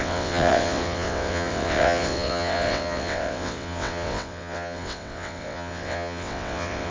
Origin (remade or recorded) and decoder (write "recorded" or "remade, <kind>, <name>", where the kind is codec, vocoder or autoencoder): remade, vocoder, WaveNeXt